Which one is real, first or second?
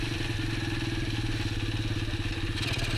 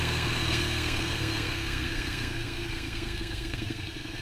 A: first